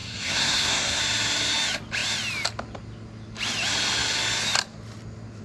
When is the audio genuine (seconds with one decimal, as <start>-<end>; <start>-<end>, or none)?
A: 1.0-5.4